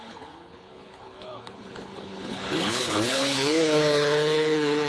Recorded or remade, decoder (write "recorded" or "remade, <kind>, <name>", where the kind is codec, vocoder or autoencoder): remade, codec, HILCodec